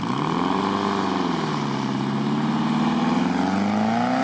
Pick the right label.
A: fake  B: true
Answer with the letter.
B